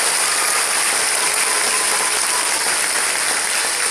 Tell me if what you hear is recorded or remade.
recorded